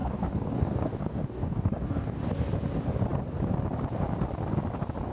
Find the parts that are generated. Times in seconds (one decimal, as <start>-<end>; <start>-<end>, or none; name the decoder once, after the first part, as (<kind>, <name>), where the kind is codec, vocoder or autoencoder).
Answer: 0.0-2.2 (codec, DAC)